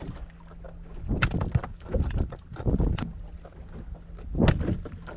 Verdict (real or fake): real